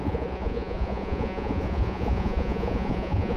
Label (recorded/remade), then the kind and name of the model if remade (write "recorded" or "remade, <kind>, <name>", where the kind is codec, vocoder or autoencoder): remade, vocoder, Vocos